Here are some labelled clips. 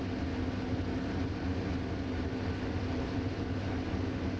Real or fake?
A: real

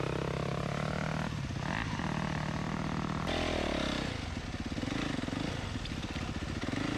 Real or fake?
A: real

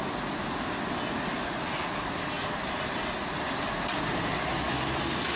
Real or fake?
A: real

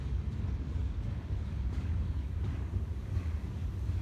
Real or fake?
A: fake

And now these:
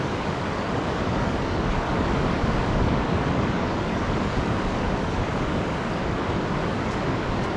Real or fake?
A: fake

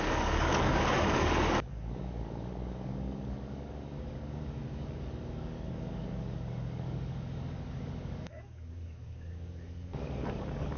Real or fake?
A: fake